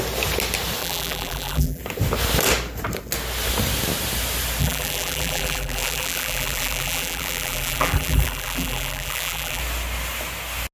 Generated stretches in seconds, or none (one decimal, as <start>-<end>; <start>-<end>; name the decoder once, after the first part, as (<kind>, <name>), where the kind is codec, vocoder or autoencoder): 0.8-1.8 (vocoder, BigVGAN v2); 4.6-9.6